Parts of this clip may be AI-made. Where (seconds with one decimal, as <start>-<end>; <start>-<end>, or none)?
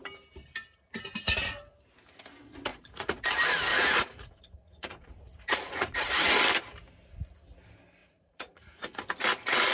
2.7-3.2; 3.7-6.4; 8.0-9.0